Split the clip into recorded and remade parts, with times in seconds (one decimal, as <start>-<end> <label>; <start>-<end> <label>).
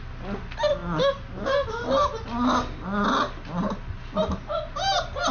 0.0-5.3 recorded